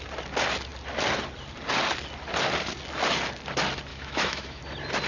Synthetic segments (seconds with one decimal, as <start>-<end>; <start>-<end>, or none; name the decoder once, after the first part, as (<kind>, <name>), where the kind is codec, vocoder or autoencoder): 3.9-4.6 (autoencoder, DAC-VAE)